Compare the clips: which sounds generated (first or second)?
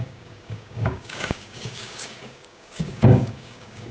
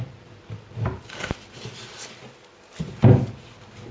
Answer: first